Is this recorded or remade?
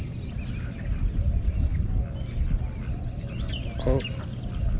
recorded